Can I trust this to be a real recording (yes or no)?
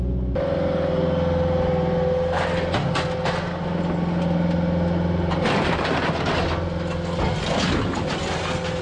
yes